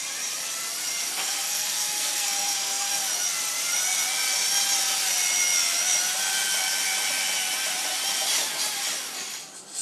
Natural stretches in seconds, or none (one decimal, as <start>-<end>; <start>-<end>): 0.0-1.0; 2.9-9.8